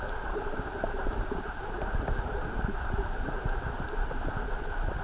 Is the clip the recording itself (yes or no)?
yes